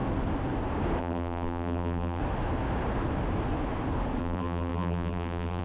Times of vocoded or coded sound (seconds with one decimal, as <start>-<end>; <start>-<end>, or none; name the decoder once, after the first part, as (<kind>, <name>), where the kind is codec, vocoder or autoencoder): 1.0-2.2 (vocoder, BigVGAN v2); 4.2-5.6